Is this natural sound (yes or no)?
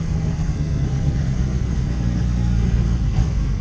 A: no